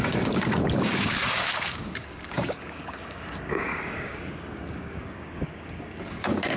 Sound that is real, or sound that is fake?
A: fake